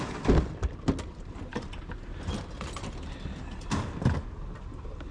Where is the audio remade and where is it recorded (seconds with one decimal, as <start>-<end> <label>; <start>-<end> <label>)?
0.0-1.5 recorded; 1.5-4.0 remade; 4.0-5.1 recorded